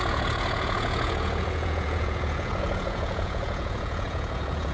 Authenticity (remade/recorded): remade